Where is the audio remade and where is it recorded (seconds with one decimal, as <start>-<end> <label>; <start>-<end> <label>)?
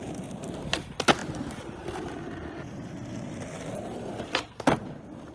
0.0-5.3 recorded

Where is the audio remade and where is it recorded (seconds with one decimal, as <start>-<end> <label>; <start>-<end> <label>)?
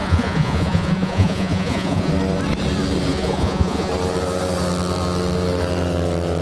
0.0-2.1 remade; 2.1-3.1 recorded; 3.1-3.9 remade; 3.9-6.4 recorded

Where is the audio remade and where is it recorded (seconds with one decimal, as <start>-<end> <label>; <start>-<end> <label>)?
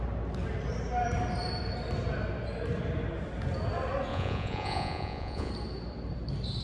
0.0-4.1 recorded; 4.1-5.5 remade; 5.5-6.6 recorded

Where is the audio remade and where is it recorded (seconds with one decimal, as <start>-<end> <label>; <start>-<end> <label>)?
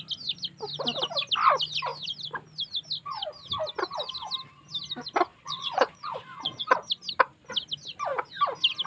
0.0-5.3 recorded; 5.3-6.7 remade; 6.7-8.9 recorded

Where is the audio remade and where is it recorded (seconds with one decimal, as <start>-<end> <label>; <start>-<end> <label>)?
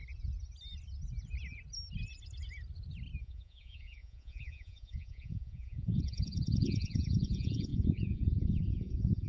0.0-3.2 recorded; 3.2-9.3 remade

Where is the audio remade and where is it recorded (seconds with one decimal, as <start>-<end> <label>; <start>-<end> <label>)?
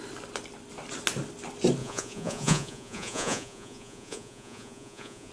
0.0-1.8 recorded; 1.8-5.3 remade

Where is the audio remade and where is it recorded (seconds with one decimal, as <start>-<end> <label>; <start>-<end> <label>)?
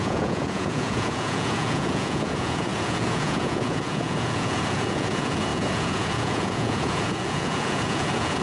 0.0-8.4 remade